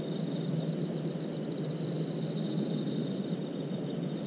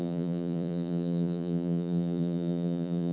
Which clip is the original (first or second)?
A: first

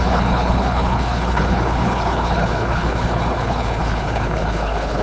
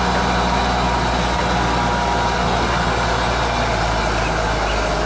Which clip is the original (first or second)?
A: second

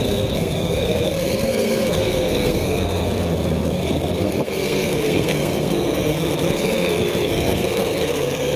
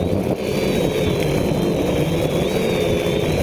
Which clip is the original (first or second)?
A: second